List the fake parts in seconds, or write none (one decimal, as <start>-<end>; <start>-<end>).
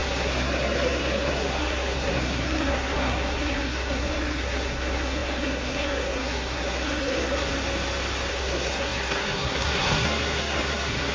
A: 0.0-7.5; 8.3-11.1